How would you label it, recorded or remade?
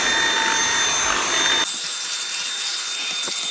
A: recorded